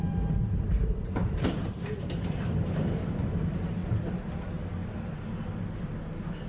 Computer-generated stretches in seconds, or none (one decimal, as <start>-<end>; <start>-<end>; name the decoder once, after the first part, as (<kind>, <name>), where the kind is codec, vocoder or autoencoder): 0.0-3.8 (vocoder, BigVGAN v2)